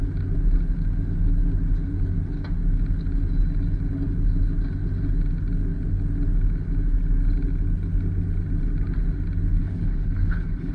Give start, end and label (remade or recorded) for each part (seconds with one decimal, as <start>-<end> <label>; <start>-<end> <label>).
0.0-9.6 recorded; 9.6-10.7 remade